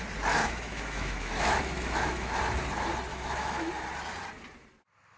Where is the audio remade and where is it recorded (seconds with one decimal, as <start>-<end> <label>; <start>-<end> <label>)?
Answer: 0.0-0.4 recorded; 0.4-2.4 remade; 2.4-3.1 recorded; 3.1-3.7 remade; 3.7-5.2 recorded